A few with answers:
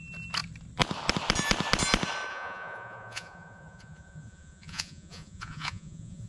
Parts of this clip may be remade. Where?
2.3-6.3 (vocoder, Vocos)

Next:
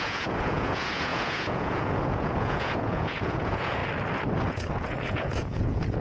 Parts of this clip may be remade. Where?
0.0-3.8 (vocoder, Vocos); 4.5-6.0

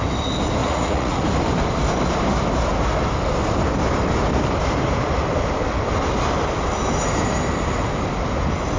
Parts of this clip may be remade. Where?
0.6-1.2 (vocoder, Vocos)

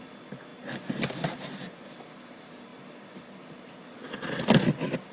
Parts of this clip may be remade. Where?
none

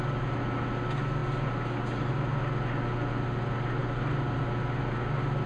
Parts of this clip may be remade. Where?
none

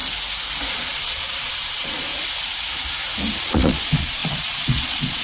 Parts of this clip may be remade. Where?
0.7-2.1 (vocoder, Vocos); 3.4-5.2

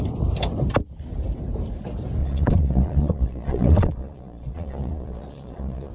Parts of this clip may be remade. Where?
2.2-5.9 (vocoder, Vocos)

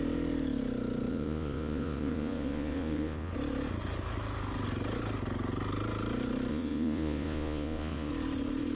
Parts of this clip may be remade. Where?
1.1-3.3 (vocoder, Vocos); 6.5-8.1